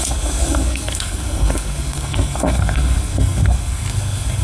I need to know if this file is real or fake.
fake